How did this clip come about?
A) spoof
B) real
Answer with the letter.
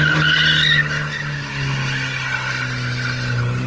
B